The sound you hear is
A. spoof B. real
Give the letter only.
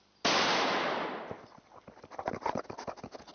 B